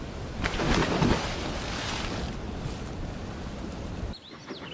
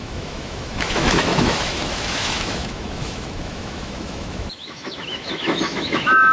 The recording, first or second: first